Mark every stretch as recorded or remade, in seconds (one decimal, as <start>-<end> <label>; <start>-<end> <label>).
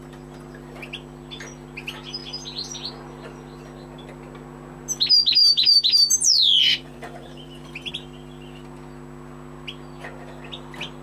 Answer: 0.0-5.4 recorded; 5.4-7.9 remade; 7.9-11.0 recorded